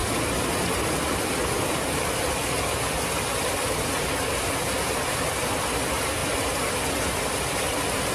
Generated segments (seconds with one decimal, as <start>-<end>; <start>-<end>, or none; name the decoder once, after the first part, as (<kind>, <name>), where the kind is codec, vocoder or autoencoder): none